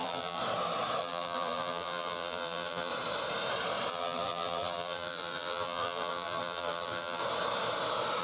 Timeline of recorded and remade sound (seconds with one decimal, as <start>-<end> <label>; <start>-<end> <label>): 0.0-0.4 remade; 0.4-1.0 recorded; 1.0-2.9 remade; 2.9-3.9 recorded; 3.9-7.2 remade; 7.2-8.2 recorded